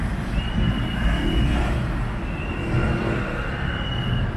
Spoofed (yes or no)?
no